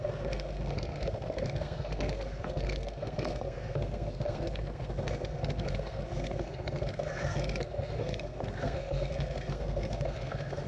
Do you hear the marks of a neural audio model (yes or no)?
yes